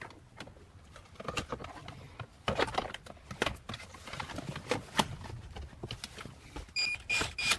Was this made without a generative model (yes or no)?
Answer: yes